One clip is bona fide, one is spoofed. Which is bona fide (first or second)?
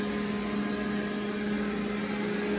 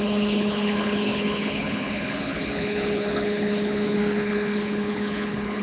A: first